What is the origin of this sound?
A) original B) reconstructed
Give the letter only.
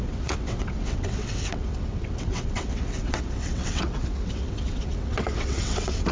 B